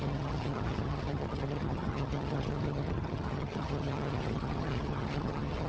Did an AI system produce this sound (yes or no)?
yes